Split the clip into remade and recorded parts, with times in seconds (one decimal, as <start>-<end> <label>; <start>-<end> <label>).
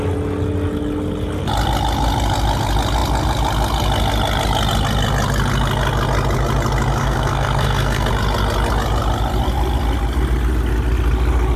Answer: 0.0-7.0 recorded; 7.0-8.1 remade; 8.1-11.6 recorded